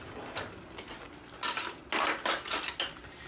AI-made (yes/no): no